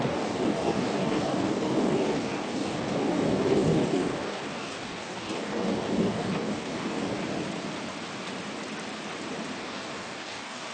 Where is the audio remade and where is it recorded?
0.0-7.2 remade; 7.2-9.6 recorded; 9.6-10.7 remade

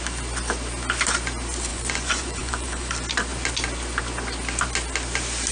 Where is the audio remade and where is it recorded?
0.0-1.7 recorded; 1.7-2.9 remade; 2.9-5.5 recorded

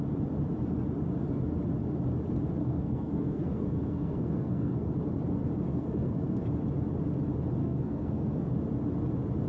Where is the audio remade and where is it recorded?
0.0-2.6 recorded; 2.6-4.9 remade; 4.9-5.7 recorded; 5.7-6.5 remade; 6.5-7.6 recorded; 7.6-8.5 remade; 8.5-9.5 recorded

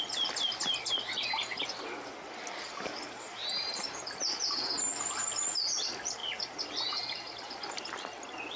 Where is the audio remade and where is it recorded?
0.0-8.6 recorded

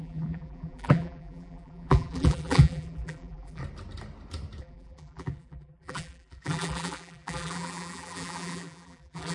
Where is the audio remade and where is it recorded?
0.0-3.6 remade; 3.6-4.6 recorded; 4.6-9.3 remade

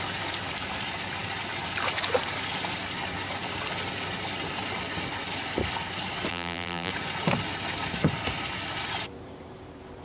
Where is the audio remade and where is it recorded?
0.0-6.3 recorded; 6.3-6.9 remade; 6.9-10.0 recorded

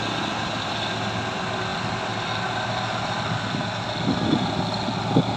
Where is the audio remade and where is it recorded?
0.0-5.4 recorded

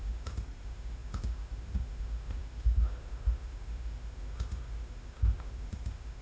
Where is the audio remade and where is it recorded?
0.0-6.2 remade